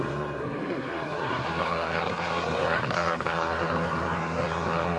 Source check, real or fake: fake